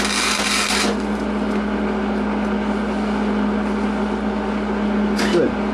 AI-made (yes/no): no